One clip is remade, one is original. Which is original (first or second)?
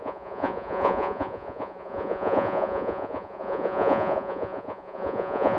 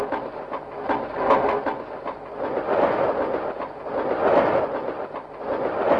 second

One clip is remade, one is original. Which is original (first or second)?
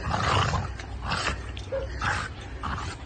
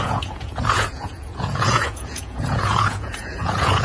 first